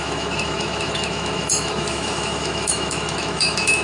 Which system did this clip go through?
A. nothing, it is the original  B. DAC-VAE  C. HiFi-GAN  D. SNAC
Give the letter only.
B